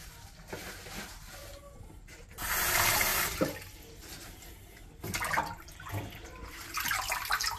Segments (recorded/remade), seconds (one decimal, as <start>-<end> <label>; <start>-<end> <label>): 0.0-3.1 recorded; 3.1-5.9 remade; 5.9-7.6 recorded

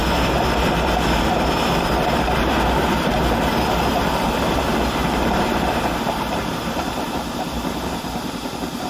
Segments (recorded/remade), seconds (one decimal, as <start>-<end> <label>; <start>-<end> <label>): 0.0-5.0 recorded; 5.0-8.9 remade

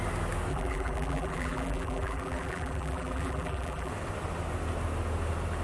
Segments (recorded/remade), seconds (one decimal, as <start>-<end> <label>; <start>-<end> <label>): 0.0-0.5 recorded; 0.5-3.9 remade; 3.9-5.6 recorded

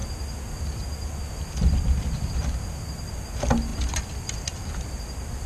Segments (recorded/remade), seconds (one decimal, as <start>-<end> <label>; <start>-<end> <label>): 0.0-3.7 recorded; 3.7-5.5 remade